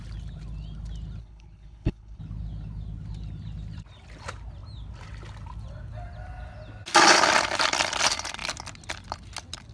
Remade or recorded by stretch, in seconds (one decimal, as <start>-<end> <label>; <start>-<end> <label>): 0.0-1.2 recorded; 1.2-2.2 remade; 2.2-9.7 recorded